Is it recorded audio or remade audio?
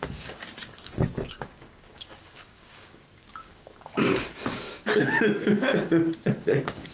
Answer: remade